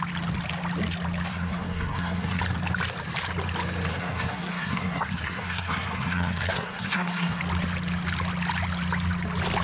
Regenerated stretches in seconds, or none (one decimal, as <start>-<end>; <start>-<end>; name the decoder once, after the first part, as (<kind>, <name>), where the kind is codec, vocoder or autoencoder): 1.3-2.4 (codec, SNAC); 3.9-7.4